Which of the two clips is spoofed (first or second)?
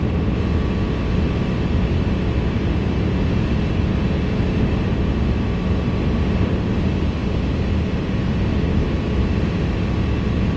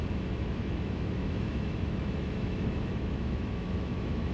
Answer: second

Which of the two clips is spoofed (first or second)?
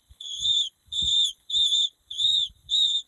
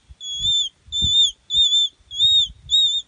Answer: first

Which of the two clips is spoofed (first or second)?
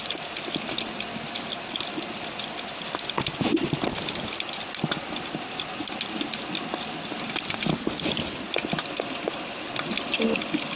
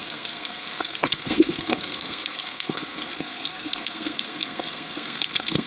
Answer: second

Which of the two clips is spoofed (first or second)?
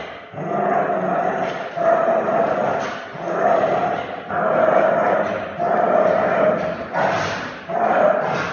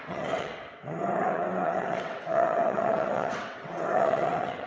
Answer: second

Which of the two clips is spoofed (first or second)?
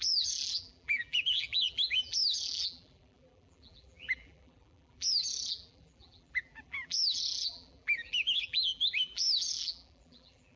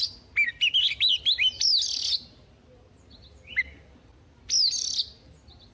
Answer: first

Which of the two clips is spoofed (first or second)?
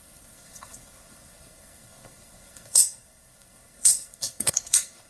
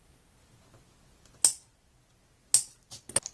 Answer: first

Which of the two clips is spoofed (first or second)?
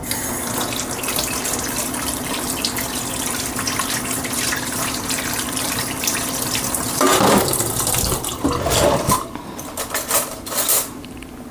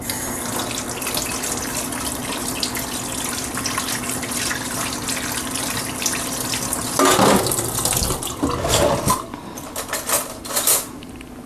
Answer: first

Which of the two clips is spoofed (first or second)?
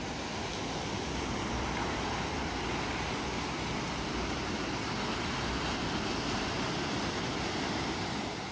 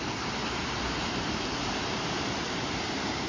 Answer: second